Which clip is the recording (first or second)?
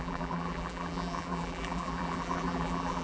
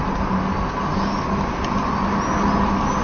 second